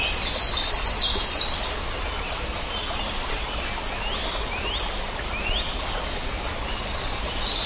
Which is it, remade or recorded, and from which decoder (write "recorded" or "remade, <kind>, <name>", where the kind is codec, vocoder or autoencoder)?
recorded